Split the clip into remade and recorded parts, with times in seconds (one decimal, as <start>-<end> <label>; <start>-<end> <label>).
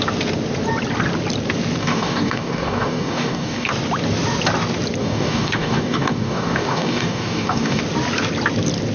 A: 0.0-1.8 recorded; 1.8-3.7 remade; 3.7-5.0 recorded; 5.0-7.8 remade; 7.8-8.9 recorded